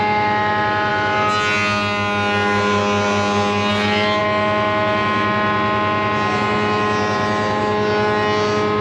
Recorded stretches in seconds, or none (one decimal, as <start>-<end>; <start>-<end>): 0.0-8.8